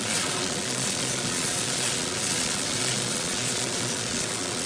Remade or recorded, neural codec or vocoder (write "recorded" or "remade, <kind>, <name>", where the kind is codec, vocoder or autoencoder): remade, vocoder, Vocos